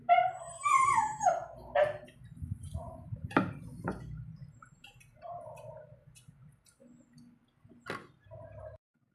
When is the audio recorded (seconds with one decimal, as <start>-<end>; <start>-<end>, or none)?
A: 1.4-2.1; 6.8-8.6